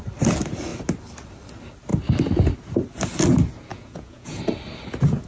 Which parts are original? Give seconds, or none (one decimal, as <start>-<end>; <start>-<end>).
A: 0.0-3.7; 4.4-5.3